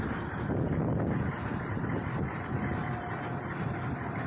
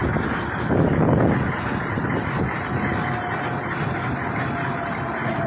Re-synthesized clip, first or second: first